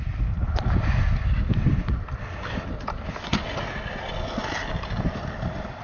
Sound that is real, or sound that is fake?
real